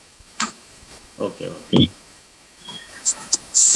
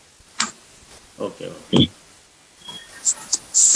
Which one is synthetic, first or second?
first